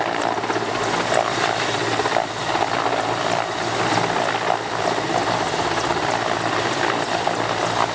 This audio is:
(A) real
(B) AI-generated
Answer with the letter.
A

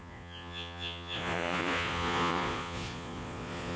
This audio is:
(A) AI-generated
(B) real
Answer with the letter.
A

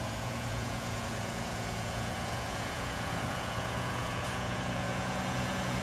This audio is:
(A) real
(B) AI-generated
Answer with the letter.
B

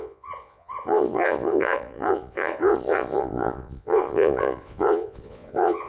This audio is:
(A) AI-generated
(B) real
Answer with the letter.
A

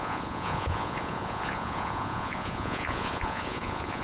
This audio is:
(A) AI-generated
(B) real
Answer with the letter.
A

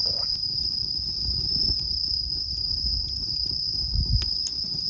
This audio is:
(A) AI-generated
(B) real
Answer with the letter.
B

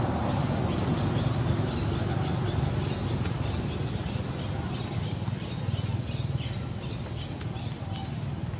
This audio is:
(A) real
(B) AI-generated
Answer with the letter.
A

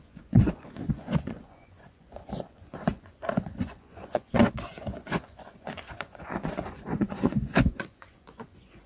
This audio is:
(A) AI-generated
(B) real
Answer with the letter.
A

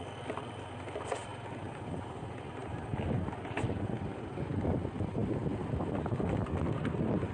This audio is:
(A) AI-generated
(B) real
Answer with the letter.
B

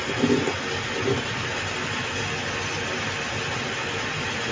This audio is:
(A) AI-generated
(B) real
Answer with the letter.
B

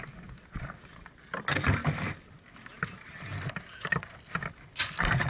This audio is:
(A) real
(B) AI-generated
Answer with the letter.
A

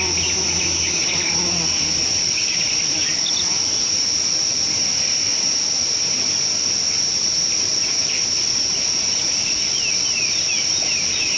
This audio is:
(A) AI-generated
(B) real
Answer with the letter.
B